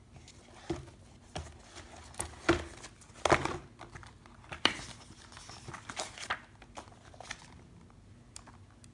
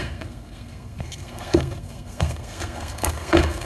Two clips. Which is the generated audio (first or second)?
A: second